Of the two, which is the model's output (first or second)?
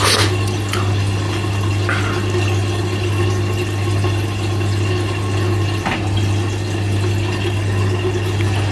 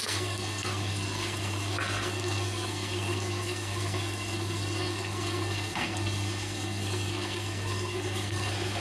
second